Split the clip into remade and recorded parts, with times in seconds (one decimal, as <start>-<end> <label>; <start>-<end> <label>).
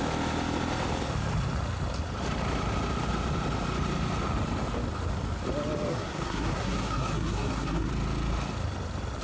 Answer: 0.0-5.9 recorded; 5.9-7.9 remade; 7.9-9.2 recorded